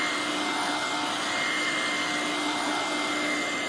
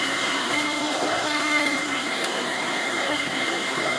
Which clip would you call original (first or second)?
first